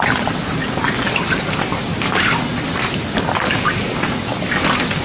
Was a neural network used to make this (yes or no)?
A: no